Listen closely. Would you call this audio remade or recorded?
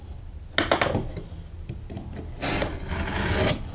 recorded